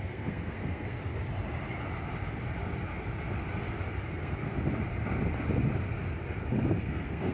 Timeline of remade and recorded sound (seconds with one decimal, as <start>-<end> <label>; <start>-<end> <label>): 0.0-1.1 remade; 1.1-4.1 recorded; 4.1-4.5 remade; 4.5-6.8 recorded; 6.8-7.3 remade